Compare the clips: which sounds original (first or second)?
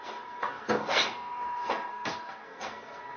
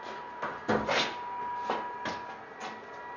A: second